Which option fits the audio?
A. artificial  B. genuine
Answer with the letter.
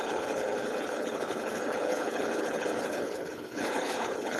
A